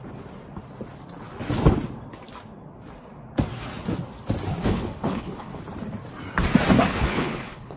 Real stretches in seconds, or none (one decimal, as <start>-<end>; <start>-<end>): 0.0-4.6; 5.6-6.9